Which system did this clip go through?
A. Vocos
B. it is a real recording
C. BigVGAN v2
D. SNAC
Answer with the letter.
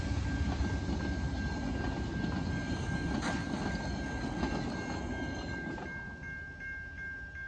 B